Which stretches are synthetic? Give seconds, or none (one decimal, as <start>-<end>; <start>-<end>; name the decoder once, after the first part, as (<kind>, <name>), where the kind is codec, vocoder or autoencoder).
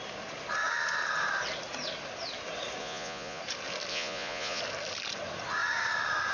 2.8-3.4 (vocoder, Vocos); 3.9-4.6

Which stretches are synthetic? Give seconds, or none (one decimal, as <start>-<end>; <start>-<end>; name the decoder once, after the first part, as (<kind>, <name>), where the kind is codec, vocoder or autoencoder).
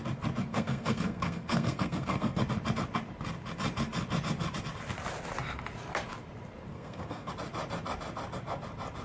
0.5-2.4 (codec, SNAC); 6.7-7.3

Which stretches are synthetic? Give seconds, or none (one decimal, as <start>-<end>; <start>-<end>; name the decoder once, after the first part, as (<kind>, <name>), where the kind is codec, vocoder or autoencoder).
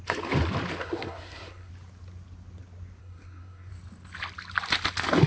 0.8-1.7 (codec, SNAC); 3.0-3.7